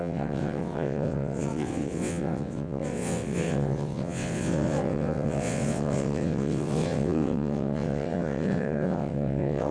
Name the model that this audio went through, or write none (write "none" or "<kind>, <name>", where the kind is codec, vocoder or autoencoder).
vocoder, WaveNeXt